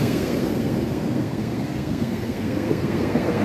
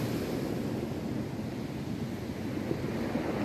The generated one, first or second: first